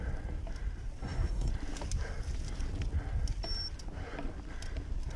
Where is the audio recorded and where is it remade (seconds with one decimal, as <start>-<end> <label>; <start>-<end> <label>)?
0.0-1.0 recorded; 1.0-1.5 remade; 1.5-5.2 recorded